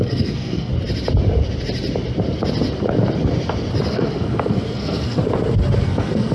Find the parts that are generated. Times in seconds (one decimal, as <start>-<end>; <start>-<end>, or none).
0.0-0.7; 3.9-5.2; 5.8-6.3